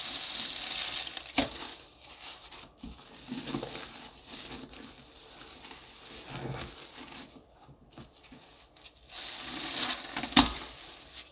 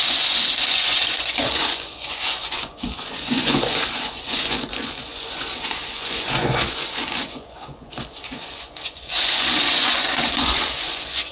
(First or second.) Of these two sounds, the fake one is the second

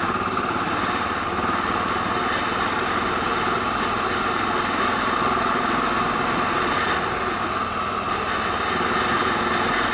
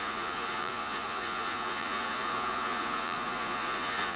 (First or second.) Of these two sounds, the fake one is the second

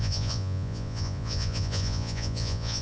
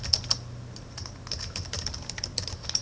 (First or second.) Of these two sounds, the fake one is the first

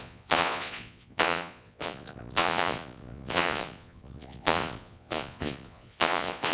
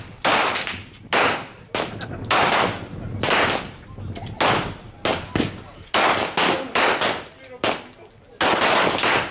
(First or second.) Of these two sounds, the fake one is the first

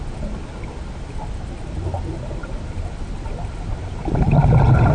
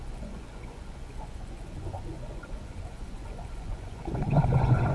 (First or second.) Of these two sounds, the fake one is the second